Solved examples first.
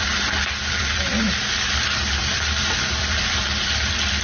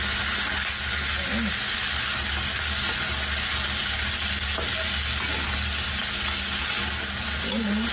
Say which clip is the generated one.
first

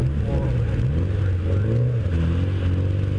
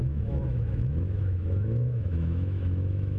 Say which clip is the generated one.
second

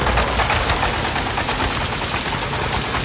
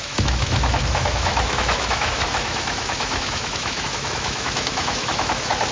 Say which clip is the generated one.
second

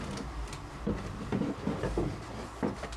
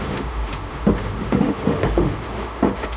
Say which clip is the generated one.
second